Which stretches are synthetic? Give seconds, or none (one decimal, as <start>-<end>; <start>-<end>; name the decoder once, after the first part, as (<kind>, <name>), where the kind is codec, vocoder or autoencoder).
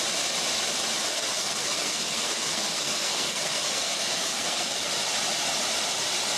1.1-4.9 (codec, SNAC)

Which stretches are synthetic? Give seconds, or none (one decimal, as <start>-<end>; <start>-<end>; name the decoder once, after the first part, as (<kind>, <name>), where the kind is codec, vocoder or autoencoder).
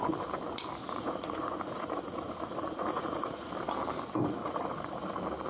0.8-3.5 (vocoder, Vocos); 4.4-5.1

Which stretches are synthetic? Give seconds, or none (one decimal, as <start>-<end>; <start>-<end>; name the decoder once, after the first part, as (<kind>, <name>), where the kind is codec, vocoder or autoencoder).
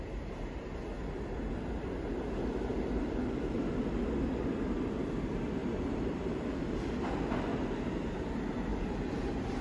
2.7-3.8 (vocoder, BigVGAN v2); 5.6-7.1; 7.5-8.1; 8.7-9.2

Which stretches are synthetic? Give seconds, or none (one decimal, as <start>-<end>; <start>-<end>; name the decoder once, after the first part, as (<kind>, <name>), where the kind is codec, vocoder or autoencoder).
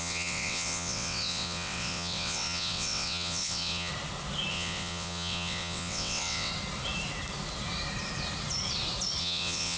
0.0-3.9 (vocoder, WaveNeXt); 4.5-6.5; 9.2-9.8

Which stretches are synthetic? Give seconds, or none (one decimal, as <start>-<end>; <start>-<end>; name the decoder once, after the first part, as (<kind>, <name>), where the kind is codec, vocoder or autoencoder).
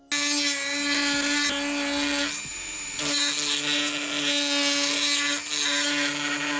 none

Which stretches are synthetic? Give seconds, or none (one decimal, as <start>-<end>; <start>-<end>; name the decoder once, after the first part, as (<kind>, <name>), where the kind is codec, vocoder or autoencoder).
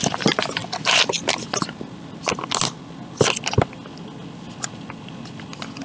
0.0-0.6 (vocoder, BigVGAN v2); 1.3-2.2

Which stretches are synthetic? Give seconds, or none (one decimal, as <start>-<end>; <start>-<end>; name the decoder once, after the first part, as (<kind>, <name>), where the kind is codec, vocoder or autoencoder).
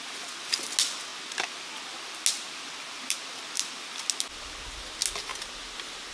none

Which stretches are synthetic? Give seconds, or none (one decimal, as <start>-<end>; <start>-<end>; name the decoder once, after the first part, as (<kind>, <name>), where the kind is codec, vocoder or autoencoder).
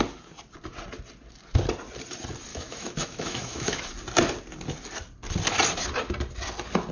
2.5-3.8 (autoencoder, DAC-VAE)